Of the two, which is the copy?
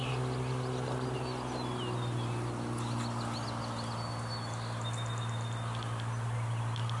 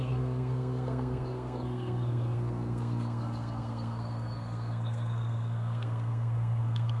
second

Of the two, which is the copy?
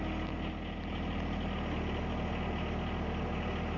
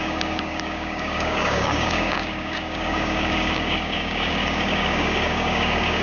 second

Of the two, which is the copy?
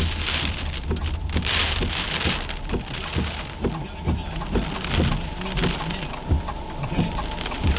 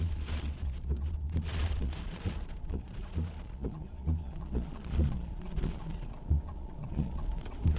second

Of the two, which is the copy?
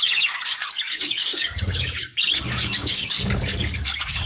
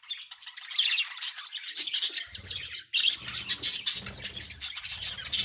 first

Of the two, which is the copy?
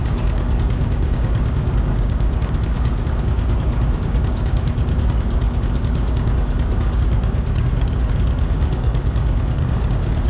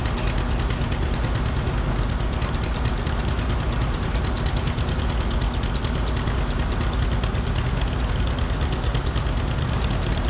first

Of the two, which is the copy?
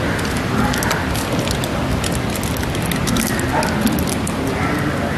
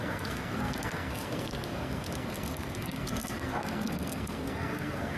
second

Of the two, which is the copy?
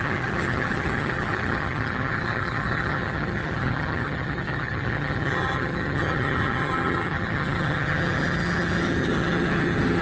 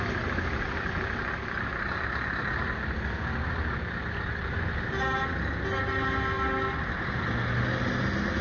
first